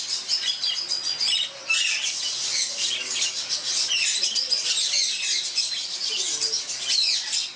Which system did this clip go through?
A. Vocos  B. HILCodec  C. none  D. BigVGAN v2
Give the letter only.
C